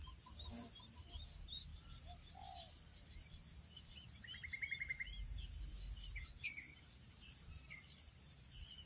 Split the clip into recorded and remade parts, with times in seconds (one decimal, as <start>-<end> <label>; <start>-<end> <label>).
0.0-0.5 recorded; 0.5-1.7 remade; 1.7-3.8 recorded; 3.8-8.9 remade